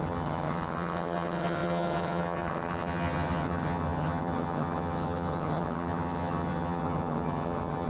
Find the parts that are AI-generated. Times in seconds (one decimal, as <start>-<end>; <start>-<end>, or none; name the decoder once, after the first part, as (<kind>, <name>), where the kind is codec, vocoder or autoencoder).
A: 0.0-7.9 (vocoder, HiFi-GAN)